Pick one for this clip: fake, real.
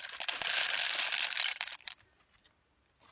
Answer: real